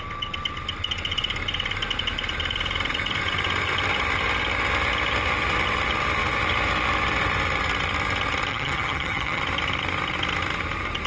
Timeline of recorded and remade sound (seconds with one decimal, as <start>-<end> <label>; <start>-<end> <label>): 0.0-8.5 recorded; 8.5-9.4 remade; 9.4-11.1 recorded

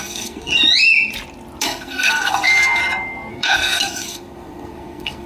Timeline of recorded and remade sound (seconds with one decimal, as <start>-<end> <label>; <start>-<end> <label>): 0.0-0.5 remade; 0.5-1.6 recorded; 1.6-2.8 remade; 2.8-3.3 recorded; 3.3-5.3 remade

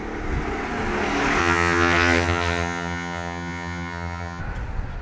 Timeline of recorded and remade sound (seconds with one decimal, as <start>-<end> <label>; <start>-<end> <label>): 0.0-1.4 recorded; 1.4-4.4 remade; 4.4-5.0 recorded